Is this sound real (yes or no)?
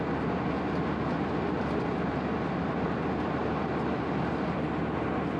yes